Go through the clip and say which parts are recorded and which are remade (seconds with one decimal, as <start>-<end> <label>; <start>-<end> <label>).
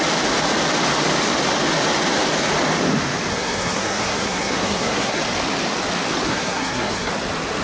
0.0-3.3 recorded; 3.3-5.2 remade; 5.2-6.3 recorded; 6.3-7.1 remade; 7.1-7.6 recorded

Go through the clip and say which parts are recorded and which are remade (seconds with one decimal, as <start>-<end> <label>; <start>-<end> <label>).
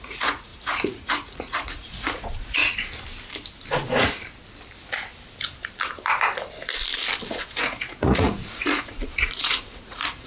0.0-2.6 remade; 2.6-7.3 recorded; 7.3-10.3 remade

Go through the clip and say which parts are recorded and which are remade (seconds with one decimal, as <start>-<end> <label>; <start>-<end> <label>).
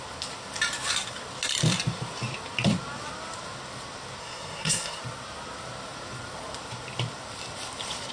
0.0-4.2 recorded; 4.2-5.0 remade; 5.0-8.1 recorded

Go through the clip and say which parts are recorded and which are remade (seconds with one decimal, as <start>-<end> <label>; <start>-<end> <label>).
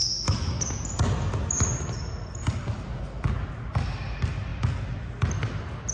0.0-5.9 recorded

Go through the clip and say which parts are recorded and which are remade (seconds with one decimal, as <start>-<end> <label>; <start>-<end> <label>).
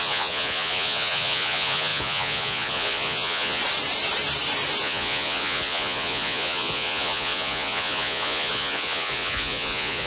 0.0-3.6 remade; 3.6-4.8 recorded; 4.8-10.1 remade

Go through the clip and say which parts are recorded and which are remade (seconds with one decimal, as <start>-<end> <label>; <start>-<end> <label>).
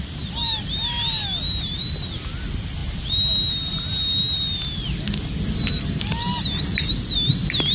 0.0-7.7 recorded